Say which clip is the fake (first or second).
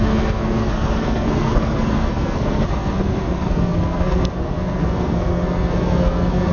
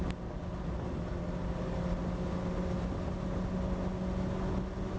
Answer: first